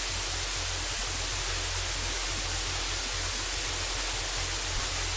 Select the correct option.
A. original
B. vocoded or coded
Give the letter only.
A